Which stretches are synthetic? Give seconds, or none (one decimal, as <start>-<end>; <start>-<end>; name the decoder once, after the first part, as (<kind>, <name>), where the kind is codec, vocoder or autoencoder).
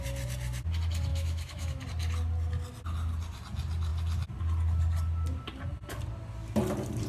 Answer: 1.1-1.8 (autoencoder, DAC-VAE)